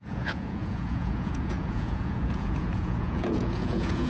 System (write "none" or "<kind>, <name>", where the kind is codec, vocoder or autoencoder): vocoder, Vocos